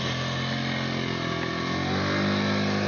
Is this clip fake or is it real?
real